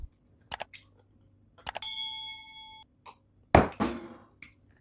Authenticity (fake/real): real